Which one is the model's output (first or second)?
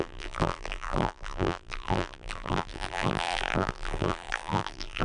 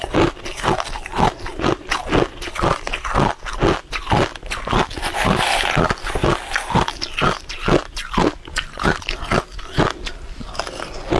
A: first